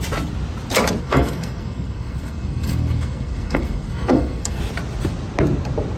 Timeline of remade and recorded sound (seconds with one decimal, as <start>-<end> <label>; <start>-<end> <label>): 0.0-1.0 recorded; 1.0-4.6 remade; 4.6-6.0 recorded